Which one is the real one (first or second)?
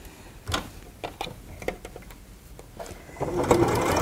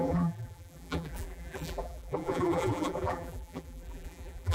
first